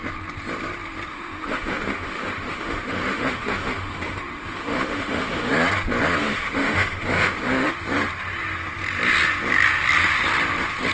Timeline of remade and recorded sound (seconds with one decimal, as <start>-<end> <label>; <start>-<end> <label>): 0.0-1.1 recorded; 1.1-5.5 remade; 5.5-6.2 recorded; 6.2-7.7 remade; 7.7-10.9 recorded